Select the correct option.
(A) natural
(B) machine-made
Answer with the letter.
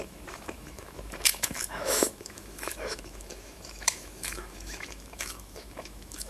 B